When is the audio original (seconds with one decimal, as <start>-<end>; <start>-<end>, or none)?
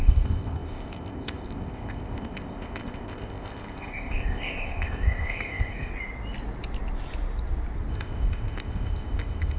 5.9-7.9